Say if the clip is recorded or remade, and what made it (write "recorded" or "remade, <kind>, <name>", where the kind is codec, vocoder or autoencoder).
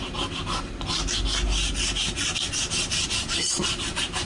recorded